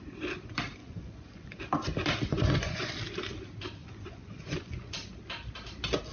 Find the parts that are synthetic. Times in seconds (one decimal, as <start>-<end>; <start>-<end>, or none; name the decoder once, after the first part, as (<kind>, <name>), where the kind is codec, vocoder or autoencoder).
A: 0.8-1.6 (vocoder, Vocos); 2.3-2.9; 3.8-4.9